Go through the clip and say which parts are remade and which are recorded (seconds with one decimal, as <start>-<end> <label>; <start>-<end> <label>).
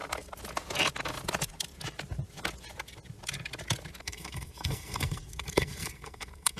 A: 0.0-4.0 recorded; 4.0-6.6 remade